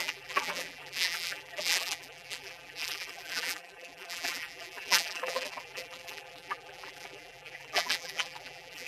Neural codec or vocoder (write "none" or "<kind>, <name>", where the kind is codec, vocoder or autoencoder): vocoder, BigVGAN v2